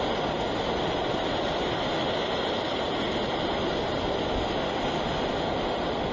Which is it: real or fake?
real